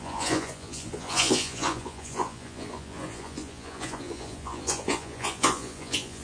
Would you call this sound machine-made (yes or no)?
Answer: yes